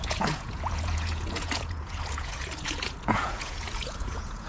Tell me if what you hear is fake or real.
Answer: fake